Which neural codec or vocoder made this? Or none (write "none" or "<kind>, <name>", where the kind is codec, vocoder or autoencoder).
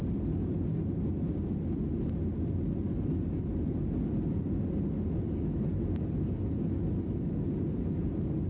none